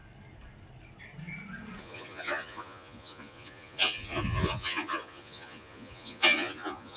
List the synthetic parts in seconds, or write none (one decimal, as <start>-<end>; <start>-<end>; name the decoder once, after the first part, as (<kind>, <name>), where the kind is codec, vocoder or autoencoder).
1.8-7.0 (vocoder, Vocos)